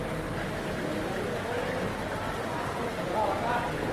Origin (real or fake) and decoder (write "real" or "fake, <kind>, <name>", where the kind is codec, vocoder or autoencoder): real